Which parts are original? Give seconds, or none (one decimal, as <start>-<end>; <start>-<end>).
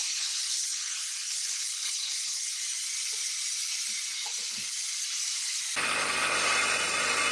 2.6-7.3